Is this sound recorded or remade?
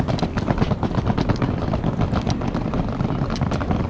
recorded